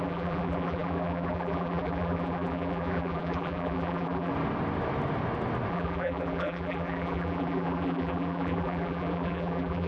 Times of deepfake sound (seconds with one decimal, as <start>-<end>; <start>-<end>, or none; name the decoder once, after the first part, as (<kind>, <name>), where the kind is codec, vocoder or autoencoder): 0.0-4.3 (vocoder, BigVGAN v2); 5.7-9.9